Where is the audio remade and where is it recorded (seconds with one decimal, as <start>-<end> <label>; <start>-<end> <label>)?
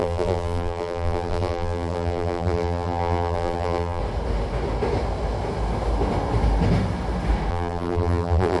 0.0-4.0 remade; 4.0-7.5 recorded; 7.5-8.6 remade